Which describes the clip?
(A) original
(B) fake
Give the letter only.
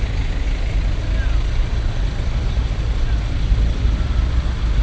A